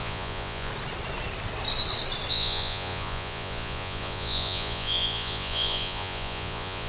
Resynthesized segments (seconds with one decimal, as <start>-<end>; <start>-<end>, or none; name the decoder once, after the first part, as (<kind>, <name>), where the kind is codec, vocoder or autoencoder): 0.0-0.7 (vocoder, Vocos); 2.3-6.9